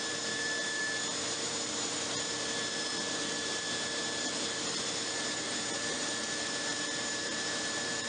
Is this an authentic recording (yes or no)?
no